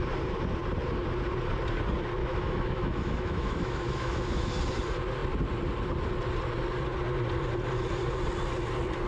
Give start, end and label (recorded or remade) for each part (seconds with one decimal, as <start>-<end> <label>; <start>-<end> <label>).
0.0-2.2 recorded; 2.2-4.6 remade; 4.6-9.1 recorded